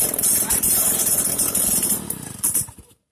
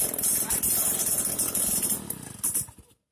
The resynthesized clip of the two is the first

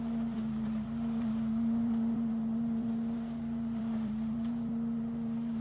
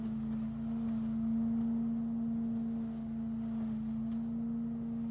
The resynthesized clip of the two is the first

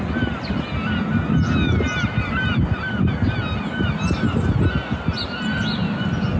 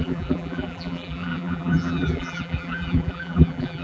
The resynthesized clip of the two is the second